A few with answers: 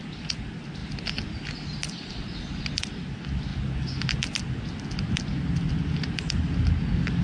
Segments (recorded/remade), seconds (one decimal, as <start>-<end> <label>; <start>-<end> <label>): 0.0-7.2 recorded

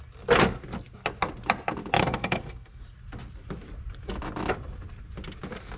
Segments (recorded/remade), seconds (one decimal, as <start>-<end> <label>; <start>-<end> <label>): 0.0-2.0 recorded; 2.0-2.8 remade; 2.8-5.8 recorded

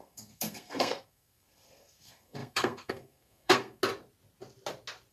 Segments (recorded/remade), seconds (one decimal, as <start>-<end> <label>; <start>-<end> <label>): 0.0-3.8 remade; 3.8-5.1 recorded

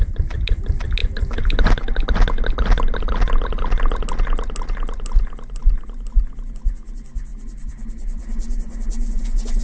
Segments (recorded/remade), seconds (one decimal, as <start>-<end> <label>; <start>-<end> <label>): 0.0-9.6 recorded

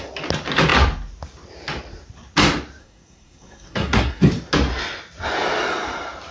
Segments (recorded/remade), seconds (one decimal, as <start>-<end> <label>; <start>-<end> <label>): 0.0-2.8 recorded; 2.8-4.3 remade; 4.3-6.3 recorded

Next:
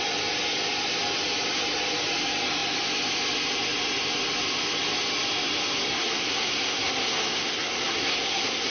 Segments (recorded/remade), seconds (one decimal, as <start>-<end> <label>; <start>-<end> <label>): 0.0-5.9 recorded; 5.9-8.7 remade

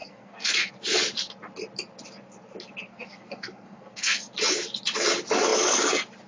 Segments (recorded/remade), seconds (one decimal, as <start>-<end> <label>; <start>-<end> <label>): 0.0-0.7 remade; 0.7-2.9 recorded; 2.9-4.3 remade; 4.3-6.3 recorded